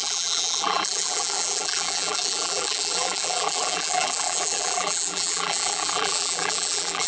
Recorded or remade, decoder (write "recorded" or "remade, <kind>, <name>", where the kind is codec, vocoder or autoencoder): remade, vocoder, BigVGAN v2